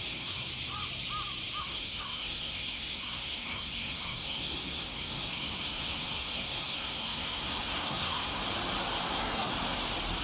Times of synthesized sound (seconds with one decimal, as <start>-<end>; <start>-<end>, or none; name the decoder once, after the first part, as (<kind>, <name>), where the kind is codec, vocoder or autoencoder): 0.0-0.5 (codec, SNAC); 1.6-8.4; 9.1-9.5